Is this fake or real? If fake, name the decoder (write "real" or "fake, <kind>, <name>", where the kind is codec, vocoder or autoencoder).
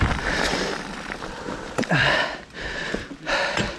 real